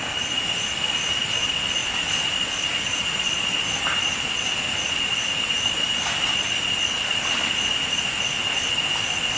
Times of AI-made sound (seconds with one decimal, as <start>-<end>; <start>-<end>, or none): none